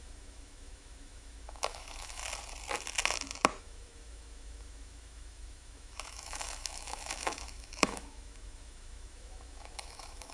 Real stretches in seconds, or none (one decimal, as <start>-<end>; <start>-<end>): 2.2-3.6